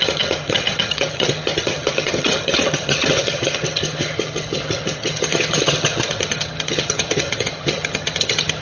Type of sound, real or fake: fake